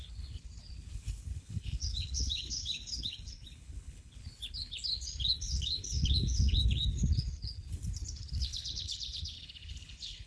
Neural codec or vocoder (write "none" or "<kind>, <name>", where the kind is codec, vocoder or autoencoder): codec, HILCodec